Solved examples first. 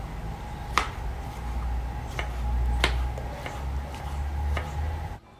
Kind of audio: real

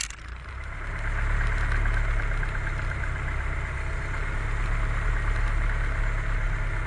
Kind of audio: real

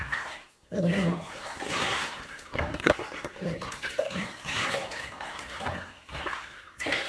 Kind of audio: fake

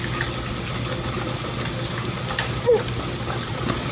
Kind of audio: real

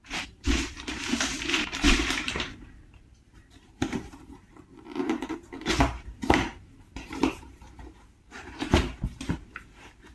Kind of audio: fake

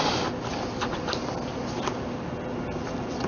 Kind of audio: real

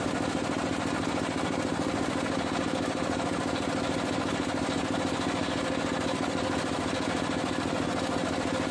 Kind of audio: real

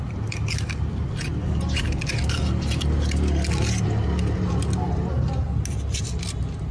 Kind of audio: real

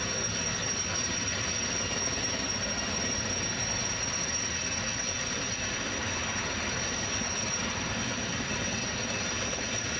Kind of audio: real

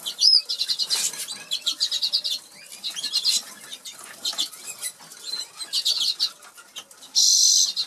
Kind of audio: real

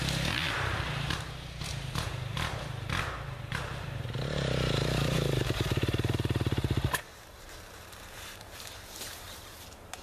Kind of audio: fake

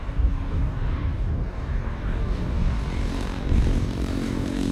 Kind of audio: fake